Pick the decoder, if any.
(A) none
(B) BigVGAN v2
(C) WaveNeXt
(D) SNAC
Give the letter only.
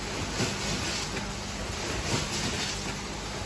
A